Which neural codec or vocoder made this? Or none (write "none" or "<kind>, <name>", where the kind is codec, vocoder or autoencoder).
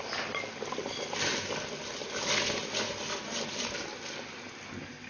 none